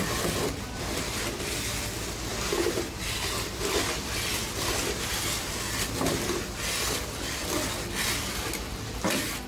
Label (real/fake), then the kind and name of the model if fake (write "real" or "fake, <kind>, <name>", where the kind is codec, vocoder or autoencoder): real